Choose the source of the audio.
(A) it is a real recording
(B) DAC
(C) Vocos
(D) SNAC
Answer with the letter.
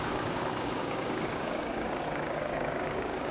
B